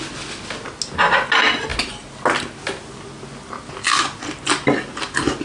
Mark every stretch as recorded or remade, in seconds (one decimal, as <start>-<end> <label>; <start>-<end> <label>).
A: 0.0-5.4 recorded